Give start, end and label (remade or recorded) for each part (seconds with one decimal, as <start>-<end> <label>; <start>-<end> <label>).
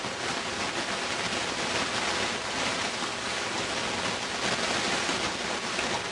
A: 0.0-3.1 recorded; 3.1-3.7 remade; 3.7-6.1 recorded